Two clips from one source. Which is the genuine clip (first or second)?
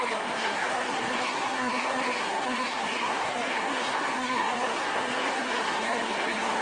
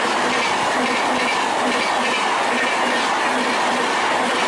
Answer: second